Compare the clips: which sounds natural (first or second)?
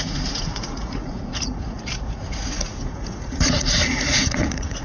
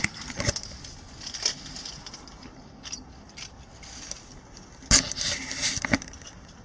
second